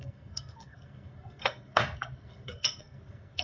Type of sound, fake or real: fake